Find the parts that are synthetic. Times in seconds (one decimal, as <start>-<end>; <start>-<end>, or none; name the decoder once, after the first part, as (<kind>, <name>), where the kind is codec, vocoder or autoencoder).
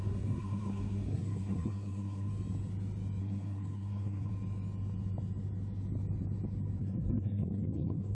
0.0-2.3 (codec, SNAC); 3.2-4.3; 6.8-8.1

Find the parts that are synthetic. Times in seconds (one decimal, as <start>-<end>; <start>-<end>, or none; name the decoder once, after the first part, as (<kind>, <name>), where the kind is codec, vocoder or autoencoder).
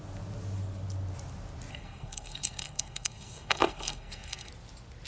1.7-4.5 (codec, SNAC)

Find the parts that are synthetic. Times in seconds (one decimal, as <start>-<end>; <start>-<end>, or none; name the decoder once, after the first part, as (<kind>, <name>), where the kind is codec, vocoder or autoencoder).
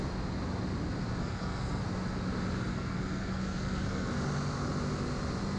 1.2-1.8 (codec, SNAC); 2.7-4.1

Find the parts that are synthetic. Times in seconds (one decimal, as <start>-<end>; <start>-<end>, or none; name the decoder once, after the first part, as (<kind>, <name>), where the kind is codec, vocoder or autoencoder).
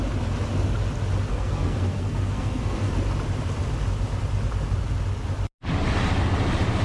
1.3-2.9 (codec, SNAC)